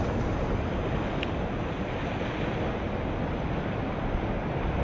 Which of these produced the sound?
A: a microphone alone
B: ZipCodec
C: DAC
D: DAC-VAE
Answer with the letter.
A